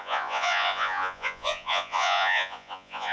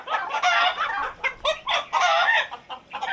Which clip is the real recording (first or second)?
second